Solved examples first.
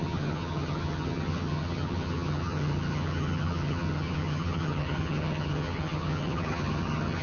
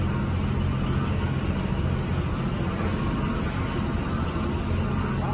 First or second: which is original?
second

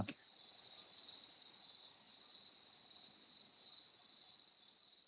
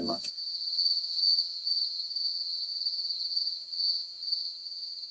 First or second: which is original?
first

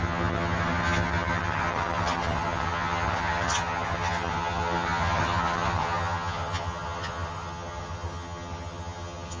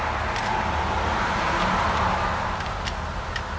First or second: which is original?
second